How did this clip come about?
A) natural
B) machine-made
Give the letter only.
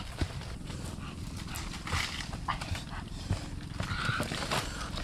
B